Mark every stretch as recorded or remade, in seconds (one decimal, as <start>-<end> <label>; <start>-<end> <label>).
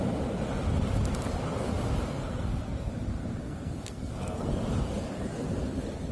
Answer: 0.0-2.2 recorded; 2.2-2.9 remade; 2.9-3.4 recorded; 3.4-4.5 remade; 4.5-6.1 recorded